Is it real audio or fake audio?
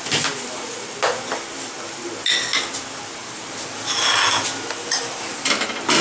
real